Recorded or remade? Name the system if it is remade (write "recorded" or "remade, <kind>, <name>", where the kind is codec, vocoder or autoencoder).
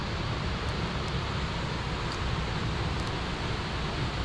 recorded